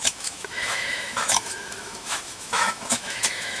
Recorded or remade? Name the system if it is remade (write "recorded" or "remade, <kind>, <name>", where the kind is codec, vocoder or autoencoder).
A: remade, autoencoder, DAC-VAE